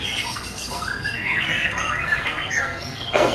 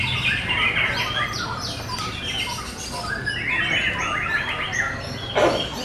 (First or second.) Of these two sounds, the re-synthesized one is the first